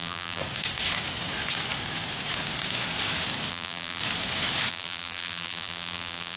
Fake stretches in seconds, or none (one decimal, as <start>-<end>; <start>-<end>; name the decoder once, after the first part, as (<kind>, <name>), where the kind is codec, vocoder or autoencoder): 0.0-0.4 (vocoder, BigVGAN v2); 3.5-4.0; 4.7-6.4